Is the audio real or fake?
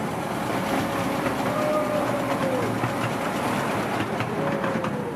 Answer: real